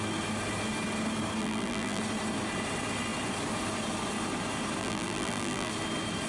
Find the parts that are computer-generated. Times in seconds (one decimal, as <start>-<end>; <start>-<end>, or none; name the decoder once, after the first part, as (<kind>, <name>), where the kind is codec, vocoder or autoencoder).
1.4-2.0 (vocoder, BigVGAN v2); 4.8-5.7